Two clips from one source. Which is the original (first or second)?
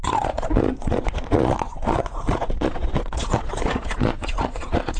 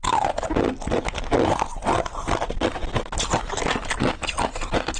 second